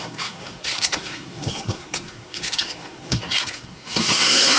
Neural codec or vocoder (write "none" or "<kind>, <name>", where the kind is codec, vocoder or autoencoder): codec, SNAC